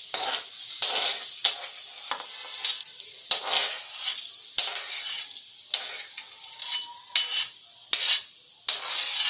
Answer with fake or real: real